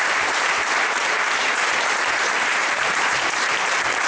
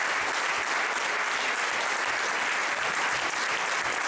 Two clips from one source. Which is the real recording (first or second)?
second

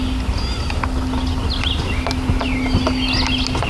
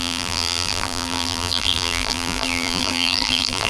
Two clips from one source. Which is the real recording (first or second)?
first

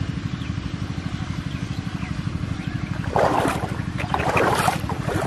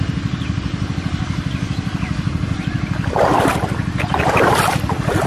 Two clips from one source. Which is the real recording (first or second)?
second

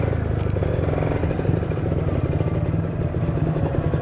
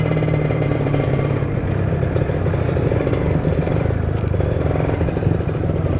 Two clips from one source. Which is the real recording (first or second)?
first